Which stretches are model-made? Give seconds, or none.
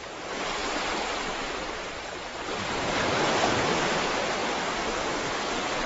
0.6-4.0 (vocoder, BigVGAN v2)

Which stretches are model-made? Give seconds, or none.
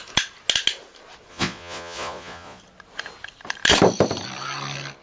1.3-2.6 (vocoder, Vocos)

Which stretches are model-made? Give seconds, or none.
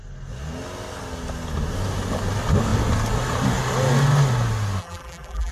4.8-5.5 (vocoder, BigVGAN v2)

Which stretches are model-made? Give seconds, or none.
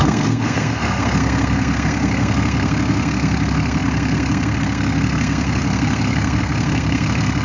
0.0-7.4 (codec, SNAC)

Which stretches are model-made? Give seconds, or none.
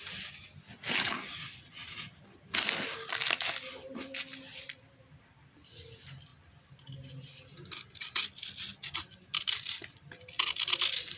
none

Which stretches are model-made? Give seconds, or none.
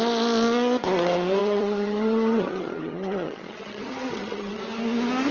1.4-4.6 (vocoder, HiFi-GAN)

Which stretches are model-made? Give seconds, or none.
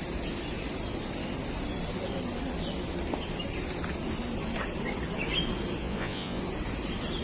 5.8-6.4 (vocoder, Vocos)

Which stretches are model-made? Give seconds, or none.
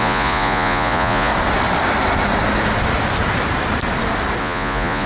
0.0-1.3 (vocoder, Vocos); 4.4-5.1